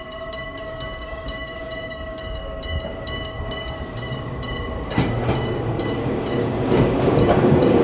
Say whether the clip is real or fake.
fake